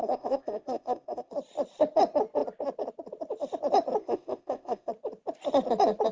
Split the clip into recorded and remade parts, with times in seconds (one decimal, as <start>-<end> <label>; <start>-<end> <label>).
0.0-1.3 remade; 1.3-4.0 recorded; 4.0-4.9 remade; 4.9-6.1 recorded